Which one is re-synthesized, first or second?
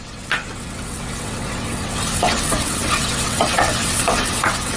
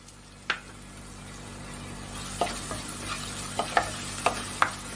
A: first